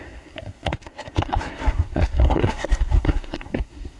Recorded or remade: remade